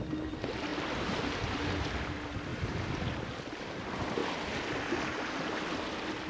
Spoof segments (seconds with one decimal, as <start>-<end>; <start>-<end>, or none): none